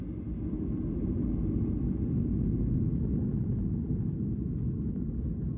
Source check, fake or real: real